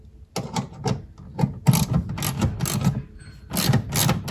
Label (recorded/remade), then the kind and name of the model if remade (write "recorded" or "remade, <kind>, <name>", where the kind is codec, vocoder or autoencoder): recorded